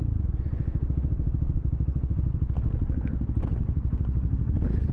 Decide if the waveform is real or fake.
real